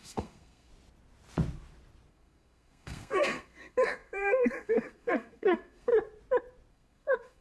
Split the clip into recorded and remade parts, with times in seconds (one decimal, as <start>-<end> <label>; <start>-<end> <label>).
0.0-0.7 remade; 0.7-2.1 recorded; 2.1-5.9 remade; 5.9-6.7 recorded; 6.7-7.4 remade